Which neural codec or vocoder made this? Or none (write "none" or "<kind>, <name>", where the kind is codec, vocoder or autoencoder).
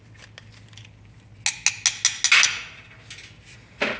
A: none